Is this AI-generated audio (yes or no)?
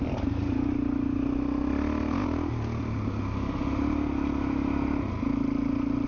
no